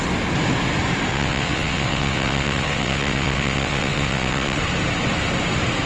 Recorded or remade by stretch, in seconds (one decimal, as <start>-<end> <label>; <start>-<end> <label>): 0.0-1.1 recorded; 1.1-4.6 remade; 4.6-5.9 recorded